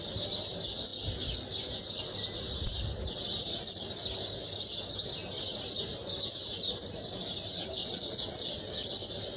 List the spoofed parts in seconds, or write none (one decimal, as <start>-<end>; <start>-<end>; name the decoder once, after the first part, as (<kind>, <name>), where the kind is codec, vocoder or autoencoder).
7.8-8.5 (vocoder, Vocos)